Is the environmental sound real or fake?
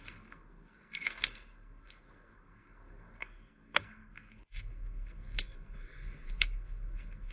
fake